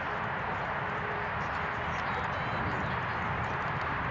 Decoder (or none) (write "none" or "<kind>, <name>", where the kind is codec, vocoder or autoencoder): none